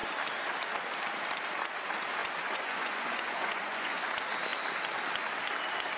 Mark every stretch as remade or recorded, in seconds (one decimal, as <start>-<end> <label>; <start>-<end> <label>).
0.0-2.2 recorded; 2.2-4.1 remade; 4.1-6.0 recorded